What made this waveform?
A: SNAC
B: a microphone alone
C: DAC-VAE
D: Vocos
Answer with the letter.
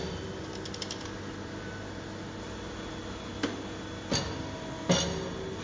B